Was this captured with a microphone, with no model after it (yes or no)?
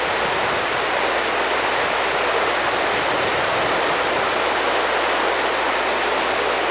yes